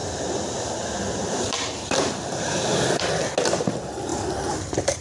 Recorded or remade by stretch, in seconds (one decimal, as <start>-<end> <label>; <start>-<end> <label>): 0.0-3.0 remade; 3.0-4.1 recorded; 4.1-5.0 remade